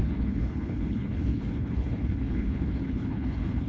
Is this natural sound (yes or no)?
no